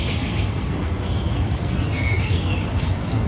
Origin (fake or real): fake